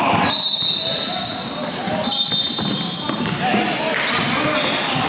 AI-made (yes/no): no